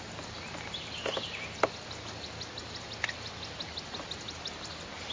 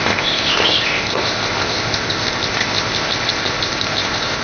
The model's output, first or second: second